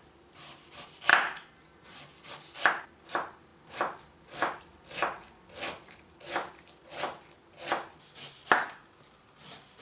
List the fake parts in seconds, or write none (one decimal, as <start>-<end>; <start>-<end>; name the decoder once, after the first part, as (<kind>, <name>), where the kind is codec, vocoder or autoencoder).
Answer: 0.0-1.1 (vocoder, BigVGAN v2); 3.1-5.0; 5.8-7.4; 8.0-9.8